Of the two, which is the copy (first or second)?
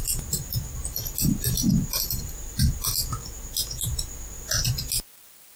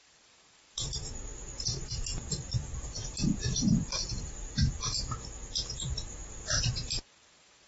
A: second